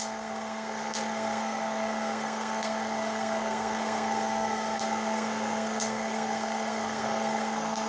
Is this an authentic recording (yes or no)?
no